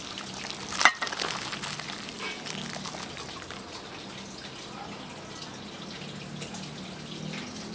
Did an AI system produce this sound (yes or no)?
no